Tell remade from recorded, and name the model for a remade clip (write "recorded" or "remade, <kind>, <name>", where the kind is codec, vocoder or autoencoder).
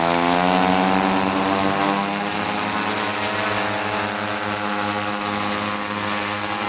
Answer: recorded